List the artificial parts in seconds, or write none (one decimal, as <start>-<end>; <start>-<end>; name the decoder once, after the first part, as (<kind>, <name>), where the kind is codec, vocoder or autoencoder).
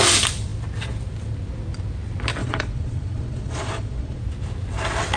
2.4-4.2 (vocoder, Vocos)